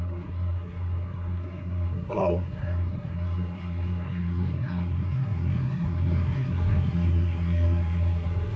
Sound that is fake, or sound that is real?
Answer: fake